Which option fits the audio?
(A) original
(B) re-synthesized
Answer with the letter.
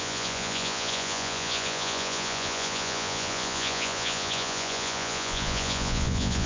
B